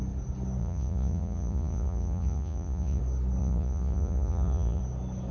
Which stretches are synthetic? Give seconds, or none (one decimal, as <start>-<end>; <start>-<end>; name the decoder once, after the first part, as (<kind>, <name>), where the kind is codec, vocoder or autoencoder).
0.6-3.0 (vocoder, Vocos); 3.4-4.8